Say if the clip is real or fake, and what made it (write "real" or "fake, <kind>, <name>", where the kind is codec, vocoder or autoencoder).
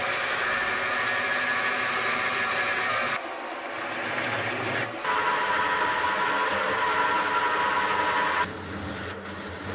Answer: real